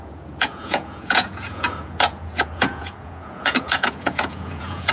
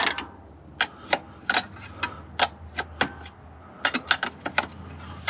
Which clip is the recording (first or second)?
second